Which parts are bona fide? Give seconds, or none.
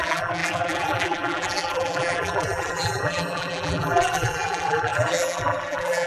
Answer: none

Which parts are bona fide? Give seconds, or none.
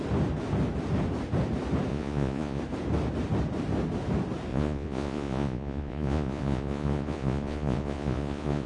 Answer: 0.0-1.9; 2.6-4.5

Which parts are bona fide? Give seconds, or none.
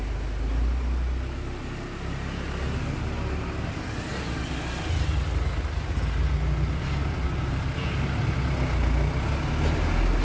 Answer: 0.0-10.2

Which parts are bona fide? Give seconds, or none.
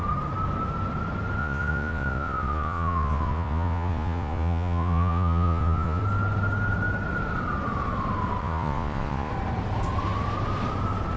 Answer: 0.0-1.4; 6.0-8.4; 9.3-11.2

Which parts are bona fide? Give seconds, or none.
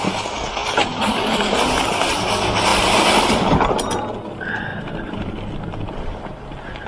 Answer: 0.0-0.6; 1.4-2.7; 3.9-4.7; 6.2-6.9